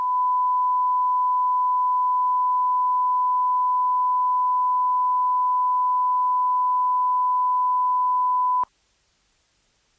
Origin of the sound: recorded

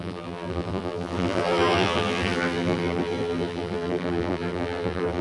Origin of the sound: remade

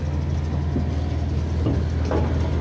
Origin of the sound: recorded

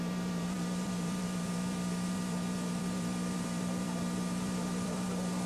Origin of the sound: remade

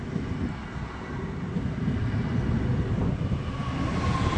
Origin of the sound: recorded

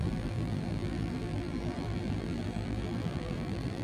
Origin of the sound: remade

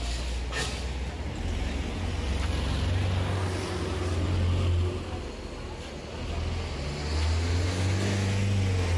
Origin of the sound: recorded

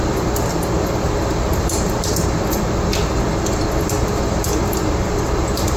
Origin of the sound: recorded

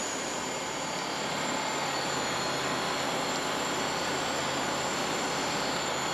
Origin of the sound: recorded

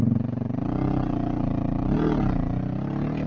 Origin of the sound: recorded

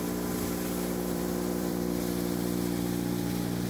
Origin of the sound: remade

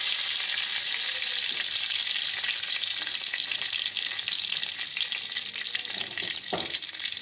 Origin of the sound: recorded